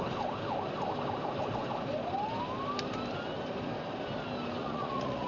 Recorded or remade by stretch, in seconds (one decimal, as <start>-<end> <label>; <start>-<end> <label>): 0.0-4.6 recorded; 4.6-5.3 remade